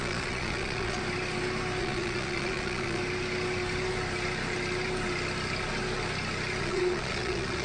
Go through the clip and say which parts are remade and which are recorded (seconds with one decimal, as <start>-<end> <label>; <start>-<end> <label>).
0.0-1.0 remade; 1.0-1.8 recorded; 1.8-3.0 remade; 3.0-6.6 recorded; 6.6-7.6 remade